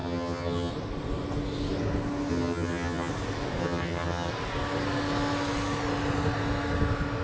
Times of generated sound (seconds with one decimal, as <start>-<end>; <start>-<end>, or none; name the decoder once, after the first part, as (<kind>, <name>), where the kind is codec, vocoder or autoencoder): 0.0-0.7 (vocoder, HiFi-GAN); 2.3-3.1; 3.6-4.3